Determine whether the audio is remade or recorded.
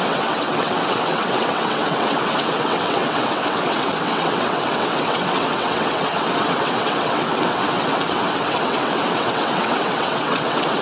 remade